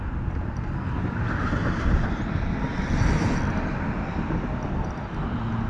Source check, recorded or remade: recorded